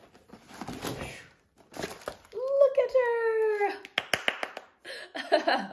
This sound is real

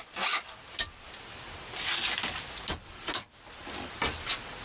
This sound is real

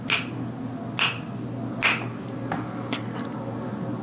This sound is real